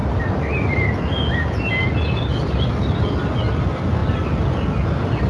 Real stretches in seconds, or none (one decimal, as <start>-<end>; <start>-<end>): 0.0-5.3